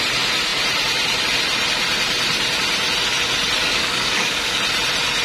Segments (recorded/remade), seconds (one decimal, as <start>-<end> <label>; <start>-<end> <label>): 0.0-3.6 recorded; 3.6-4.6 remade; 4.6-5.2 recorded